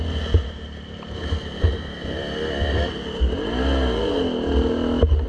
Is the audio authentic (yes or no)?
yes